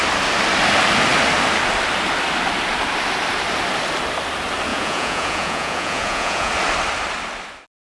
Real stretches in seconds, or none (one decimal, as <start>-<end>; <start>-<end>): 0.0-4.7; 6.5-7.8